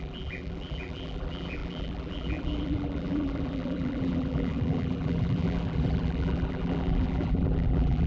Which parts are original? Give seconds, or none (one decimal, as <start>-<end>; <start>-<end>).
none